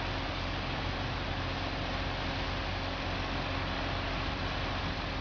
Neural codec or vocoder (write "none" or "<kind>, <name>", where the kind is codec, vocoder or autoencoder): none